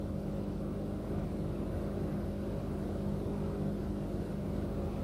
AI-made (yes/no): yes